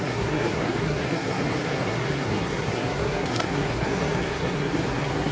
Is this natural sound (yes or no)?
no